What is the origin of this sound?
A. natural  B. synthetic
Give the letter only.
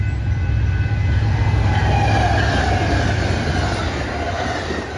A